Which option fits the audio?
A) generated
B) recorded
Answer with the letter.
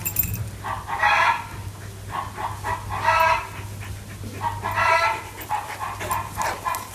B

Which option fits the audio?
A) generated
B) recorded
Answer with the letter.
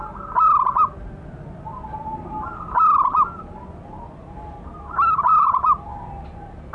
B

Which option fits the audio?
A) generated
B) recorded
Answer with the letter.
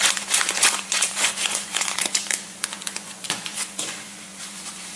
A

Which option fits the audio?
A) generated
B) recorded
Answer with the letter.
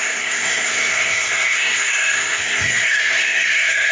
A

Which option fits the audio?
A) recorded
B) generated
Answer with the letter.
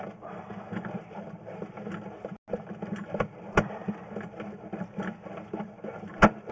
A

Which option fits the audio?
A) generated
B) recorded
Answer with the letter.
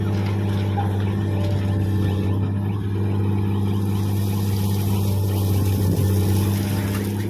B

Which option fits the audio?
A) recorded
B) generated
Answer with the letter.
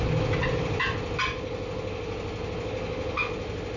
A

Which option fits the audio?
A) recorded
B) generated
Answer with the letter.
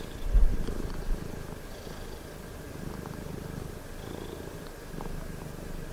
A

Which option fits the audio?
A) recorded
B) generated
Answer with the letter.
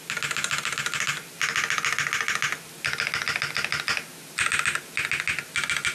A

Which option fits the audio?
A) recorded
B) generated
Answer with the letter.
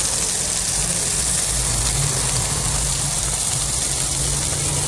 A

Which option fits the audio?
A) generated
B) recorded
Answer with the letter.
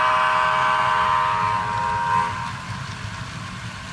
B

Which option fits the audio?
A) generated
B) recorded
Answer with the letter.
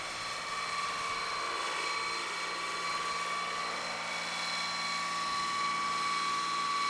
B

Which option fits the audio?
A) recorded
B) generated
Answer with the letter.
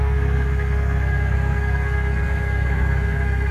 B